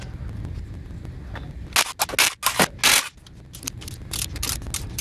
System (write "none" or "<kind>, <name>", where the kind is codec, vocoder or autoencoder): none